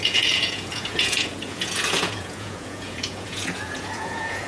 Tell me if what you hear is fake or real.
fake